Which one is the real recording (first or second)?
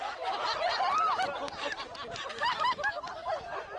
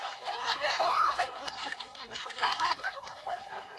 first